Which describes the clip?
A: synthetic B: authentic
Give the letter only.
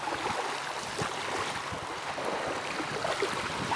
B